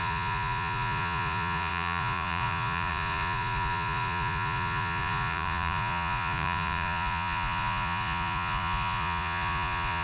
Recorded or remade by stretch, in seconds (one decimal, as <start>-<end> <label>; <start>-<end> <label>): 0.0-10.0 remade